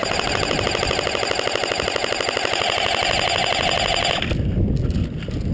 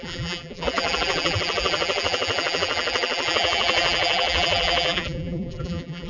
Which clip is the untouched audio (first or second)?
first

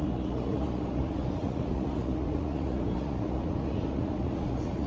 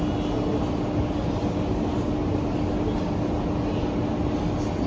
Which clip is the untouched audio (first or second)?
second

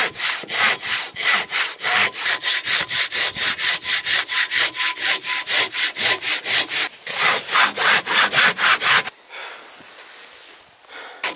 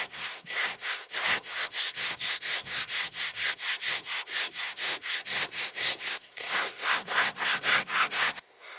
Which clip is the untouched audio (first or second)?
first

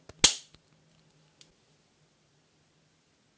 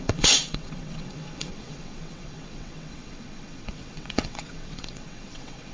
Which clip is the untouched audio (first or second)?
first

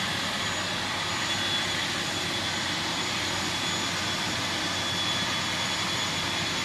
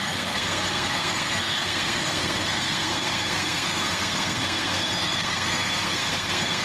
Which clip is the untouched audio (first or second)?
first